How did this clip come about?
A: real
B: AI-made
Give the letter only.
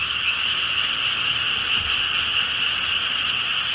A